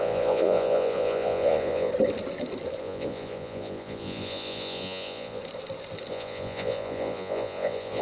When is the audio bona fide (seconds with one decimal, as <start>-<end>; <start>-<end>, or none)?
1.9-2.8; 5.4-6.1